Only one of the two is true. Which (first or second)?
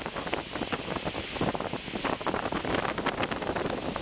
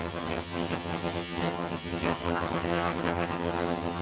first